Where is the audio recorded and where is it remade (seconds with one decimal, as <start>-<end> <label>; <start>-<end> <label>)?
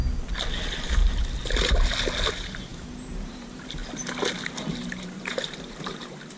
0.0-2.3 recorded; 2.3-3.8 remade; 3.8-4.5 recorded; 4.5-6.4 remade